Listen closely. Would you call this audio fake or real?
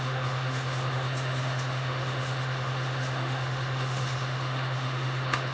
fake